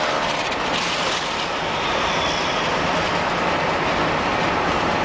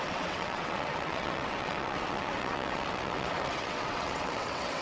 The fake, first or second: second